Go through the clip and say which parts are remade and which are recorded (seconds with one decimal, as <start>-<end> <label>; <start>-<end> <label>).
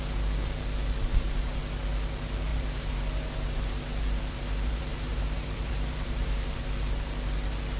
0.0-1.1 recorded; 1.1-1.6 remade; 1.6-2.5 recorded; 2.5-7.2 remade; 7.2-7.8 recorded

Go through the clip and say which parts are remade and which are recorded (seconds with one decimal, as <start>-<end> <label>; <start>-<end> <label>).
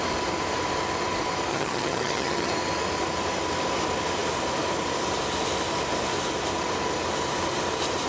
0.0-1.5 recorded; 1.5-2.5 remade; 2.5-8.1 recorded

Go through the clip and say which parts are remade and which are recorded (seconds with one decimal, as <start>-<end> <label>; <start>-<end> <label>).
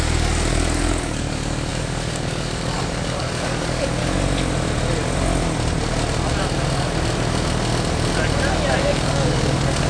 0.0-4.0 remade; 4.0-8.8 recorded; 8.8-9.9 remade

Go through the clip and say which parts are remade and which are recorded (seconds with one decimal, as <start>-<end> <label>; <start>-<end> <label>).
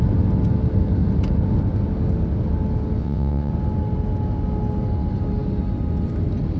0.0-3.0 recorded; 3.0-3.5 remade; 3.5-6.6 recorded